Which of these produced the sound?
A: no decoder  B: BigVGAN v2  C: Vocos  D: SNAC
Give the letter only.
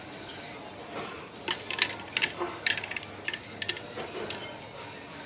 A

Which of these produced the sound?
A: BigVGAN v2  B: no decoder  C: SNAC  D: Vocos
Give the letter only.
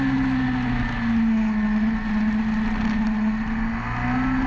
B